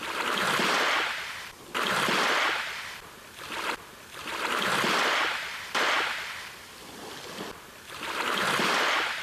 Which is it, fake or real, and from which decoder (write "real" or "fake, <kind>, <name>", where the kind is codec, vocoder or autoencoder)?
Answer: real